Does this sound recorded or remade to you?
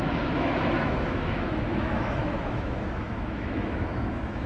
remade